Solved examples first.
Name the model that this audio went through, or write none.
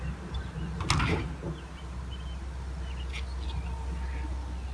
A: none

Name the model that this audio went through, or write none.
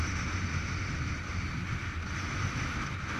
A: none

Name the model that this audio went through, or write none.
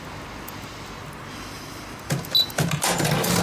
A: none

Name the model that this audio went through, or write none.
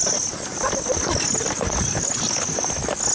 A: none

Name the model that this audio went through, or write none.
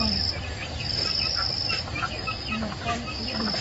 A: none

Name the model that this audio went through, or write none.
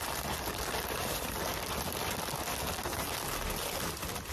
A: none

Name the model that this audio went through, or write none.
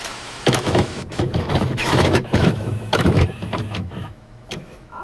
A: autoencoder, DAC-VAE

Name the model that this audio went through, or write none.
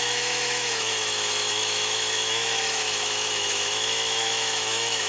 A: autoencoder, DAC-VAE